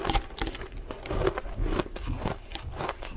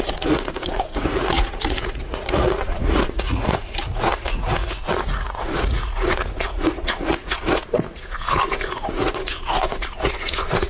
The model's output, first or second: second